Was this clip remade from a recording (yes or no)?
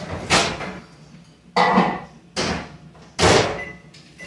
no